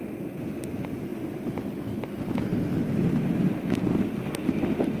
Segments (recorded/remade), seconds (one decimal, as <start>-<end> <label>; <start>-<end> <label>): 0.0-1.1 recorded; 1.1-4.0 remade; 4.0-5.0 recorded